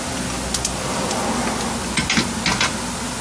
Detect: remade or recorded recorded